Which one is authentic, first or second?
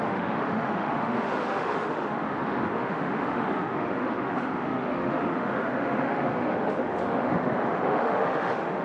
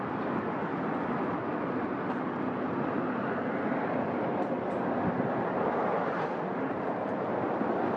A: second